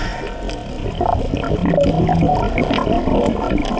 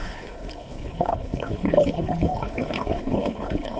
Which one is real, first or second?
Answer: first